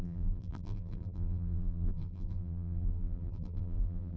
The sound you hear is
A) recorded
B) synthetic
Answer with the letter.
B